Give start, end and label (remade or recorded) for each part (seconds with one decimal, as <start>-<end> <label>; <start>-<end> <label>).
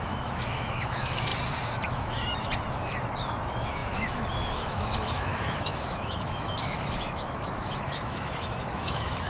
0.0-1.3 remade; 1.3-1.9 recorded; 1.9-2.5 remade; 2.5-3.2 recorded; 3.2-9.3 remade